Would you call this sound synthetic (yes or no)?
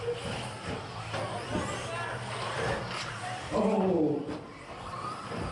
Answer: no